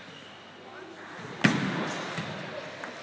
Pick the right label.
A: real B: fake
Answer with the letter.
A